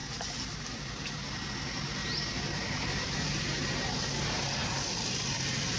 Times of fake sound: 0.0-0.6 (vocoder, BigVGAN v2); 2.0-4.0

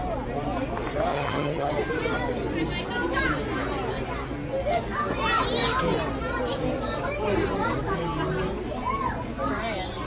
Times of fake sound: 1.1-1.7 (vocoder, HiFi-GAN)

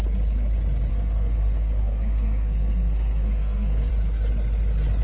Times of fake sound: 0.9-3.9 (codec, SNAC)